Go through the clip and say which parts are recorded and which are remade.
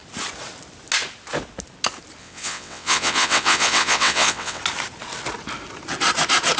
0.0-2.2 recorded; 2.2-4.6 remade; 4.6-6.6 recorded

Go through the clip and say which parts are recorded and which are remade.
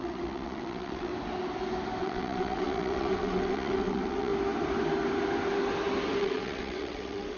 0.0-1.1 remade; 1.1-2.0 recorded; 2.0-4.3 remade; 4.3-6.2 recorded; 6.2-7.4 remade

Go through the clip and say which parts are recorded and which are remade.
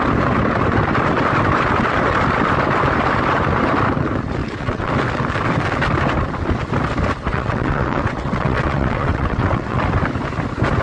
0.0-4.4 recorded; 4.4-4.9 remade; 4.9-7.3 recorded; 7.3-9.8 remade; 9.8-10.8 recorded